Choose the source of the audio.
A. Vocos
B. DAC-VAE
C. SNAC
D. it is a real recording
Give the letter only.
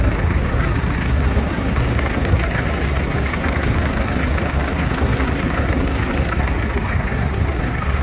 C